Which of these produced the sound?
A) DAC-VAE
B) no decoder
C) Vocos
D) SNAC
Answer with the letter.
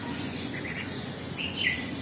C